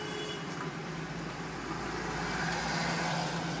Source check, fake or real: real